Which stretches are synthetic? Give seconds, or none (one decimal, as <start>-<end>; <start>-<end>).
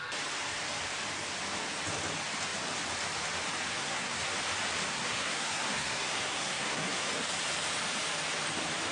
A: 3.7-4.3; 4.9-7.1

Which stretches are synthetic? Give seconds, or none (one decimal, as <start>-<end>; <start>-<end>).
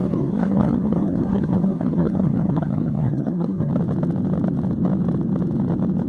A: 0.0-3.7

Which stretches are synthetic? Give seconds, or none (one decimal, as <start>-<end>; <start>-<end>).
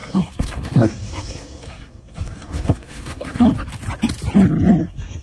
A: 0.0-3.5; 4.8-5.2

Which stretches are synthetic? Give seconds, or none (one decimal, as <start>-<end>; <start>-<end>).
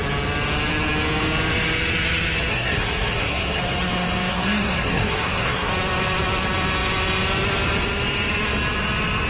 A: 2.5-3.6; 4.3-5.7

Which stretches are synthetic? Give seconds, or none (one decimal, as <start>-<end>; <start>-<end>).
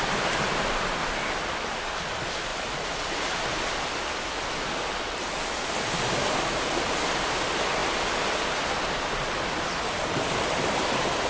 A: none